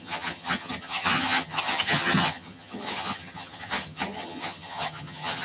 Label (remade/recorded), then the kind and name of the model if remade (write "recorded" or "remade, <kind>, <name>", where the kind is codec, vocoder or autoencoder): remade, vocoder, HiFi-GAN